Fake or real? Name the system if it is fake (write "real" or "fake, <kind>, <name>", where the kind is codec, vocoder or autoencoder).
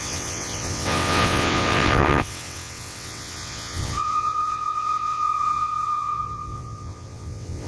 fake, vocoder, WaveNeXt